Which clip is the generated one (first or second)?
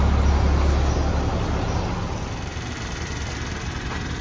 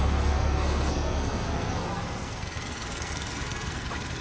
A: second